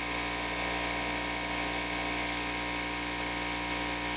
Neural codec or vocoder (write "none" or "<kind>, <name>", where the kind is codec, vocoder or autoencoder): none